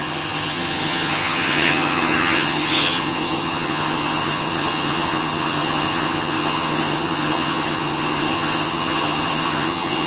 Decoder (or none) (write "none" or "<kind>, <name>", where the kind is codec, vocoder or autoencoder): vocoder, HiFi-GAN